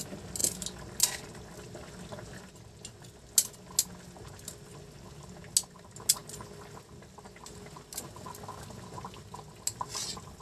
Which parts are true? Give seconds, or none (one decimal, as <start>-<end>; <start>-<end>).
0.0-10.4